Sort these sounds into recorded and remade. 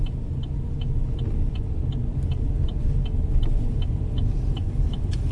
recorded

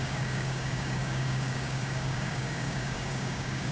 remade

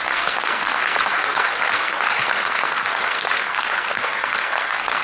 remade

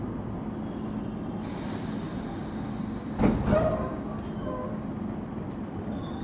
recorded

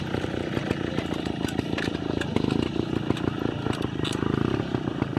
recorded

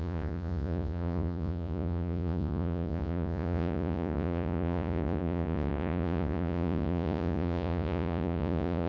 remade